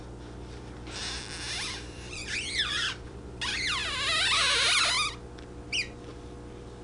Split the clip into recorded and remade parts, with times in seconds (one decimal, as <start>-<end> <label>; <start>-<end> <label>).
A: 0.0-1.0 recorded; 1.0-3.4 remade; 3.4-6.8 recorded